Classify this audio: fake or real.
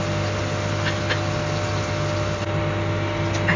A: real